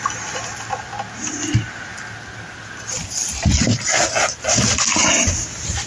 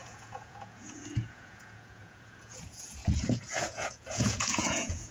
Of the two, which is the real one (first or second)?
first